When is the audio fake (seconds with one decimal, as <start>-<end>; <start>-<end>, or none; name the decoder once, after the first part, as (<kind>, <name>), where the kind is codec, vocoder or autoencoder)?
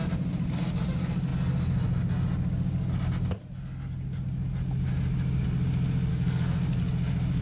6.1-6.8 (codec, SNAC)